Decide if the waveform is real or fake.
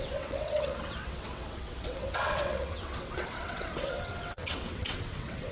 fake